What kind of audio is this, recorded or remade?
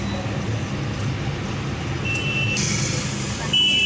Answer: recorded